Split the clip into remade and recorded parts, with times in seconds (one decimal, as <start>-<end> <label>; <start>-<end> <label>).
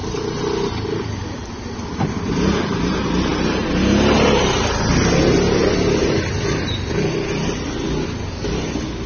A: 0.0-9.1 recorded